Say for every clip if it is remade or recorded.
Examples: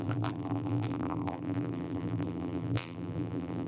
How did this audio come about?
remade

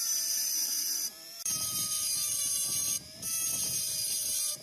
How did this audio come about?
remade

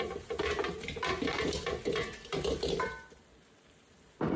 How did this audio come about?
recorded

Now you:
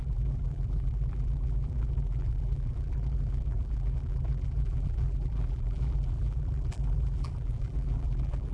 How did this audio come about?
remade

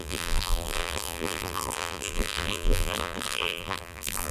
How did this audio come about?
remade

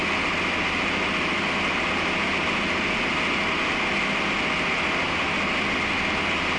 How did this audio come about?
recorded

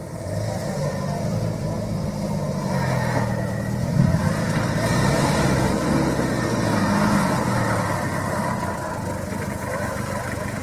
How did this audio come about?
recorded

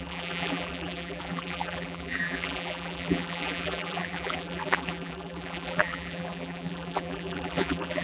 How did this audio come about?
remade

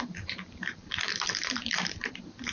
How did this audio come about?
remade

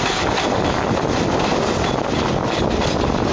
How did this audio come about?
recorded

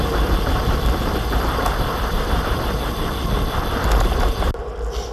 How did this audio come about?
remade